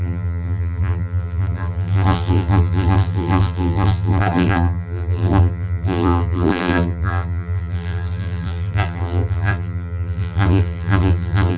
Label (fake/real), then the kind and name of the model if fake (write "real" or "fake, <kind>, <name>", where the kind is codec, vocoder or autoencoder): fake, vocoder, BigVGAN v2